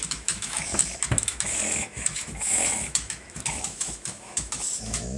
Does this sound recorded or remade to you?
remade